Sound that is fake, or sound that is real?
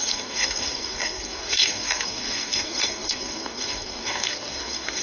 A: fake